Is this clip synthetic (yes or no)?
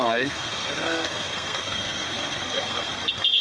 yes